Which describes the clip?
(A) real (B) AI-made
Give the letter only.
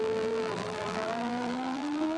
B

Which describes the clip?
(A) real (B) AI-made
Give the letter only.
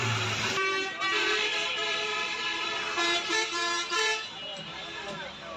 B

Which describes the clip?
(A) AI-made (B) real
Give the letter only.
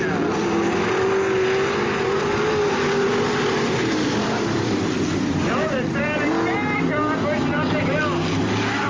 B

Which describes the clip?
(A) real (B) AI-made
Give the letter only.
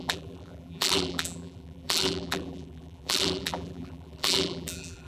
B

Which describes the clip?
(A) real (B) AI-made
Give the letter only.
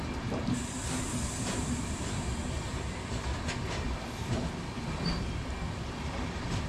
B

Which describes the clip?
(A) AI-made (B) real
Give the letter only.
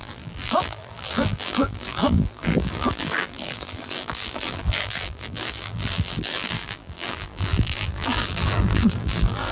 A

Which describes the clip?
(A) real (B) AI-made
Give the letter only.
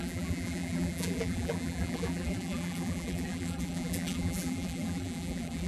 B